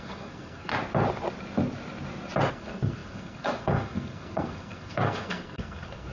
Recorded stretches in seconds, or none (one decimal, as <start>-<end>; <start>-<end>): 0.7-2.5